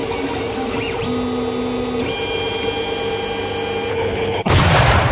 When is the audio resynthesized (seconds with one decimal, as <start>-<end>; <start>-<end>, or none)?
3.9-4.6